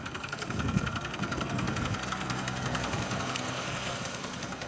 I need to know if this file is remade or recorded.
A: remade